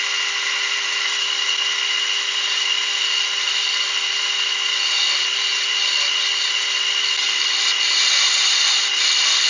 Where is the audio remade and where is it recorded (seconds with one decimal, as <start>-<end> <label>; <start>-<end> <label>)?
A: 0.0-9.5 recorded

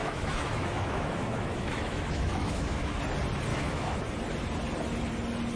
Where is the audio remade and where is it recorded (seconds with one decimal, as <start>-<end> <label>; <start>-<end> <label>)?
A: 0.0-3.0 remade; 3.0-3.5 recorded; 3.5-4.1 remade; 4.1-5.6 recorded

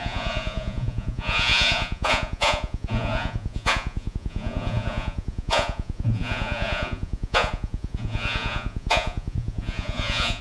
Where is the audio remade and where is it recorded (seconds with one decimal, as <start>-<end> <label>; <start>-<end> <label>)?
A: 0.0-10.4 remade

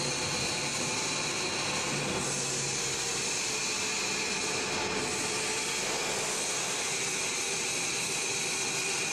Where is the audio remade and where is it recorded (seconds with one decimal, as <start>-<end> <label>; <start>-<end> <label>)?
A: 0.0-9.1 recorded